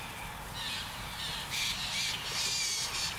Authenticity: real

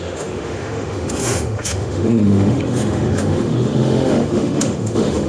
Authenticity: fake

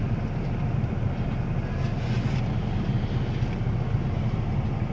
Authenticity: real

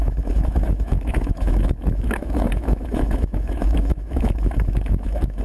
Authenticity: fake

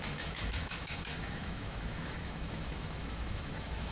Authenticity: fake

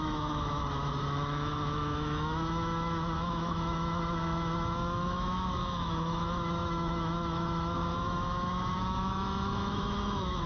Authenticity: fake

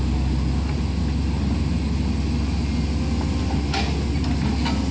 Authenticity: real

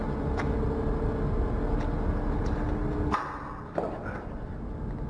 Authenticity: real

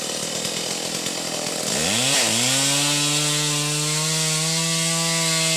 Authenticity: real